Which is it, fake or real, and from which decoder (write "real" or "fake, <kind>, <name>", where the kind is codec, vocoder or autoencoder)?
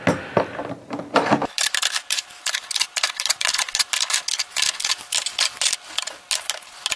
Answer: real